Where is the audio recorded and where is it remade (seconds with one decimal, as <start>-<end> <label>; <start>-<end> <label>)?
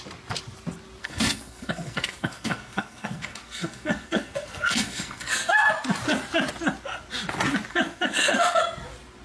0.0-1.0 recorded; 1.0-5.7 remade; 5.7-7.7 recorded; 7.7-8.6 remade; 8.6-9.2 recorded